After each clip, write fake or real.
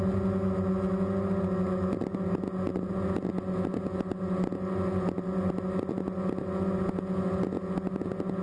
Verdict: real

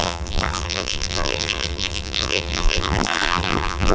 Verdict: fake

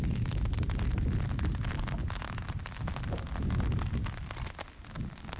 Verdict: real